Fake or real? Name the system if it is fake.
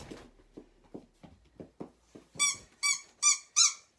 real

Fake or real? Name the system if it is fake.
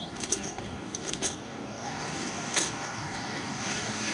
fake, codec, DAC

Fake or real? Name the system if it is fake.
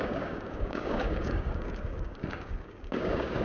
fake, codec, DAC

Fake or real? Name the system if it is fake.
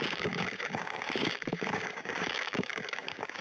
fake, codec, DAC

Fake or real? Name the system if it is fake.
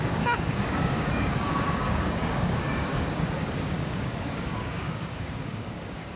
fake, codec, DAC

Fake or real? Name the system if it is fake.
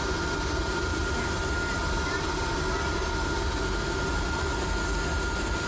real